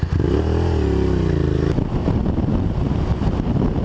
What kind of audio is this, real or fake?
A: real